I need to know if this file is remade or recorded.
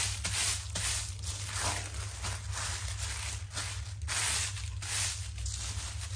recorded